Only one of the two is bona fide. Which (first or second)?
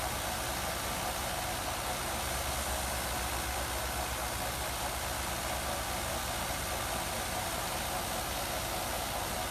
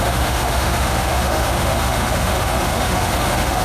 first